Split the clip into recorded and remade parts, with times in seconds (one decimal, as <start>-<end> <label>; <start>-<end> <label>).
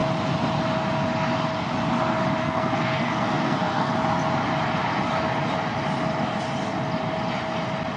0.0-2.4 recorded; 2.4-3.9 remade; 3.9-8.0 recorded